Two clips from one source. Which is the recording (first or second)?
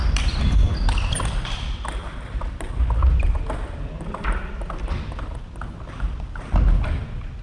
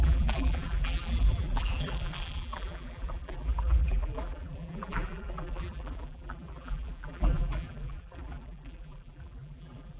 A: first